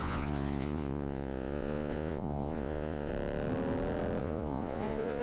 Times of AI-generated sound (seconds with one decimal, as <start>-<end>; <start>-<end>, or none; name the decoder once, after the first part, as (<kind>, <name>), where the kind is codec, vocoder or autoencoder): 0.0-3.1 (vocoder, Vocos); 4.2-5.2